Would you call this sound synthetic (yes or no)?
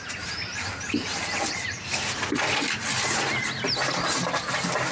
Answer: no